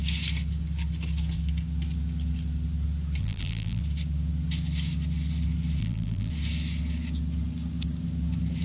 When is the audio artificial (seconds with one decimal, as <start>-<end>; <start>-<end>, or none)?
3.2-3.8; 5.8-6.3